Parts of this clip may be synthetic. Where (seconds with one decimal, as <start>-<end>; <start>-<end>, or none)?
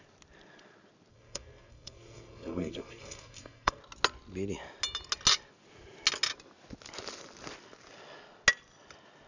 1.1-3.8